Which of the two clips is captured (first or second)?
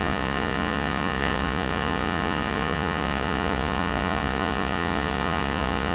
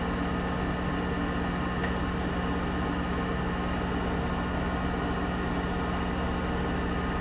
second